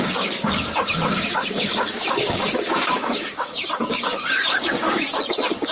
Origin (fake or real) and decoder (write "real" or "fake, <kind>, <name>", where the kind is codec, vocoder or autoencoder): fake, codec, DAC